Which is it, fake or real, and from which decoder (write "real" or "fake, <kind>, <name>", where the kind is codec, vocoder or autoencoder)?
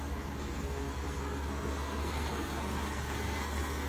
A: fake, codec, SNAC